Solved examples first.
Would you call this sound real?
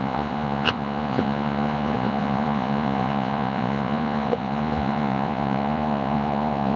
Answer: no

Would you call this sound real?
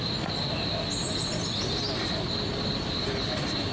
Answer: yes